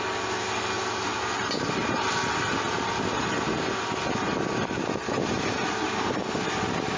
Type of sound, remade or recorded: recorded